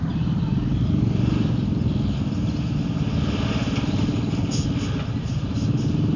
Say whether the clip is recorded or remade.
recorded